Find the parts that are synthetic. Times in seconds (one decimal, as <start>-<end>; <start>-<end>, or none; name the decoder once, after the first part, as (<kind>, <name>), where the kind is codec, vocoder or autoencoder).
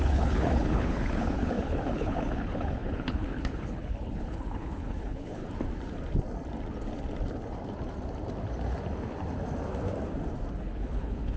0.0-5.4 (codec, HILCodec); 10.6-11.4